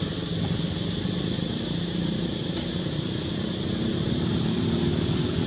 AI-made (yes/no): no